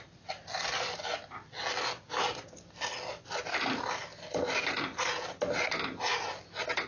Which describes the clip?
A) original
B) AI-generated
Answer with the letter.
A